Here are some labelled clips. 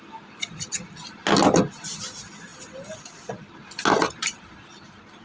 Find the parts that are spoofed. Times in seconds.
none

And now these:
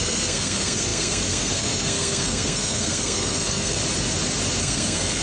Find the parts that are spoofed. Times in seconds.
0.0-3.8 (codec, SNAC); 4.6-5.2